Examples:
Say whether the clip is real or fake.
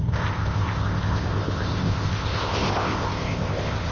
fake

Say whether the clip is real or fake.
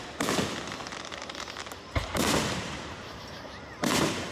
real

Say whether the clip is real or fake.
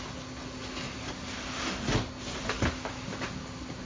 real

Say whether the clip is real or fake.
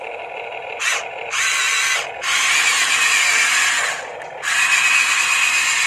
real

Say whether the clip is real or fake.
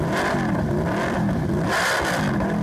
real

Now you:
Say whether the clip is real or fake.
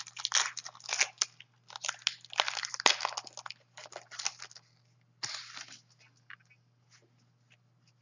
real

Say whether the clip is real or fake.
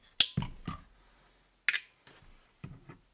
real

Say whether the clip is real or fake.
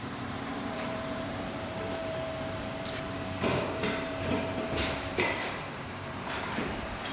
fake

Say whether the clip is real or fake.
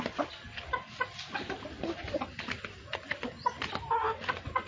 real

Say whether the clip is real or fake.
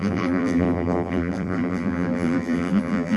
fake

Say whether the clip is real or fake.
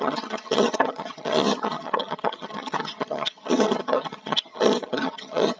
fake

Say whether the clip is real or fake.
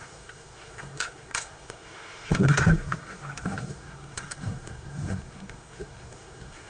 fake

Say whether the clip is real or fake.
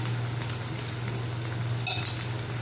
real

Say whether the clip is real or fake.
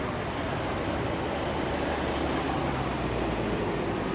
real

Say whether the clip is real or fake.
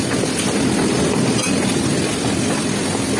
real